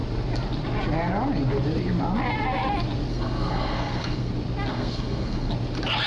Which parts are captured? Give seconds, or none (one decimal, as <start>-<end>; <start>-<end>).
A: 0.0-3.1; 4.3-4.7; 5.5-6.1